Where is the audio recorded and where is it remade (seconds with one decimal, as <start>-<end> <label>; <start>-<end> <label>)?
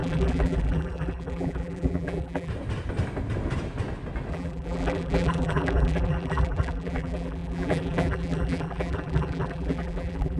0.0-2.5 remade; 2.5-4.3 recorded; 4.3-10.4 remade